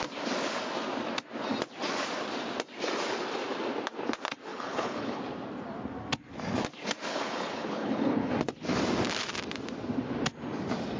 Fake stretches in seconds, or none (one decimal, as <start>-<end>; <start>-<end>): 4.5-5.2; 7.1-8.3